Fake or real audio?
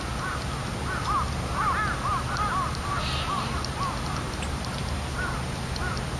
real